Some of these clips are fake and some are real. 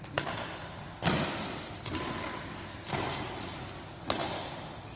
real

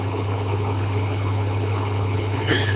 fake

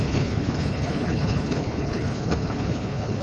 fake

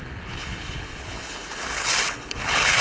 fake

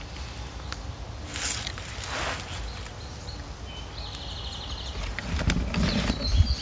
real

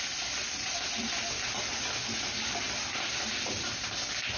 real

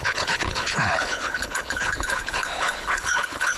fake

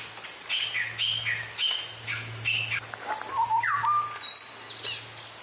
real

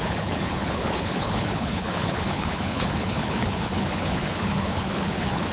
fake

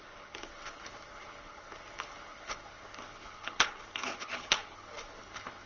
fake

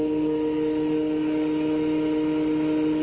real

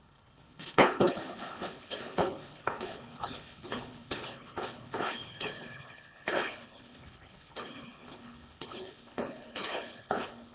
fake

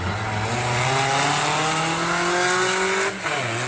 real